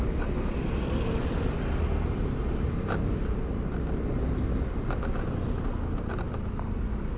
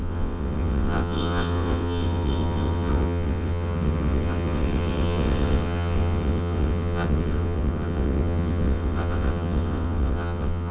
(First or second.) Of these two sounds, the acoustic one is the first